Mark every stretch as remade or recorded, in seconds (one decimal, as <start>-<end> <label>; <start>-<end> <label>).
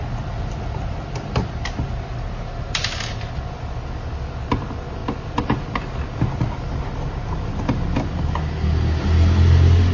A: 0.0-9.9 recorded